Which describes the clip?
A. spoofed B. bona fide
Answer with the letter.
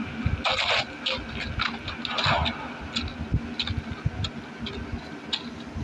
B